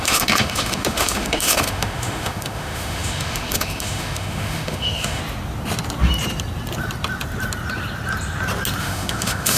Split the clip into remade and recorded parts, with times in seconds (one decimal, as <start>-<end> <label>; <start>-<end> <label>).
0.0-5.2 remade; 5.2-8.8 recorded; 8.8-9.6 remade